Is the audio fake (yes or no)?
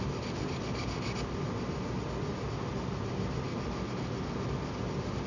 no